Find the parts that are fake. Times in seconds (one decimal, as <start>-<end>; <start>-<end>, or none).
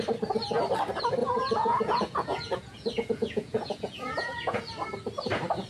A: 1.2-4.6